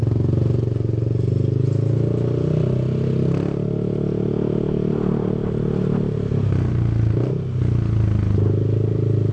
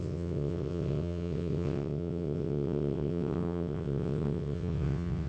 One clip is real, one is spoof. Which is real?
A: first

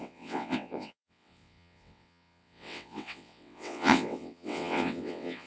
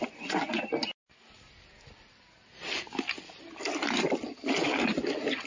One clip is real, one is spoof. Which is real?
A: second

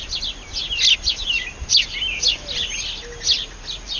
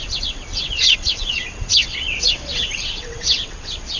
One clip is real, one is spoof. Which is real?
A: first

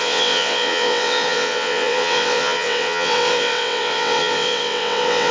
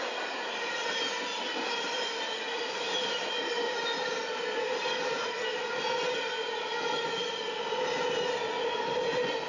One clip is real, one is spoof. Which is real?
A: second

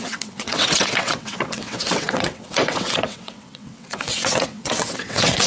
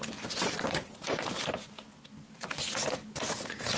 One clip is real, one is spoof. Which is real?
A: second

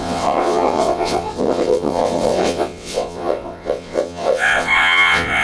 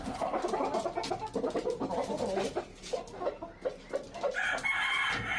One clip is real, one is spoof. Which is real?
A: second